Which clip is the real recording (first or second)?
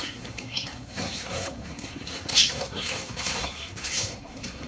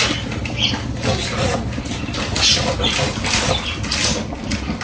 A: second